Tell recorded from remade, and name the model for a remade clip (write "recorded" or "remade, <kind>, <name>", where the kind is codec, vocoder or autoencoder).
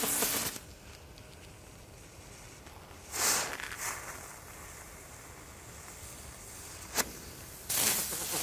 recorded